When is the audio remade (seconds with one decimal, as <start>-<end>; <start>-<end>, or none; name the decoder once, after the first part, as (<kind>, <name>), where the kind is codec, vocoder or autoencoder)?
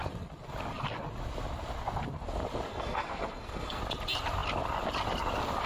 2.7-3.8 (codec, SNAC)